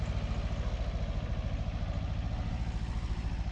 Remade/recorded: recorded